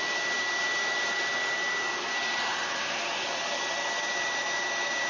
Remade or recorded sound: recorded